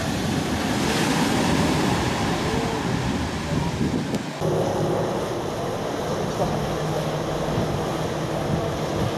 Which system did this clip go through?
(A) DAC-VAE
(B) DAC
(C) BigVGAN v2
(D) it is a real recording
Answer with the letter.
D